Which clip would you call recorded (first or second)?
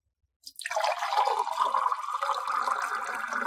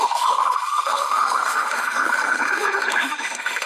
first